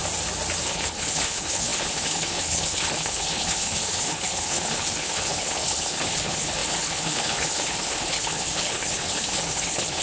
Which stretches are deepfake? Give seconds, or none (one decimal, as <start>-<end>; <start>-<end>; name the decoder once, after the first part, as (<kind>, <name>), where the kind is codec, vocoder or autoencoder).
0.6-10.0 (codec, HILCodec)